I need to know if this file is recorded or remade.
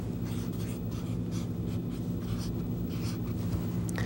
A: recorded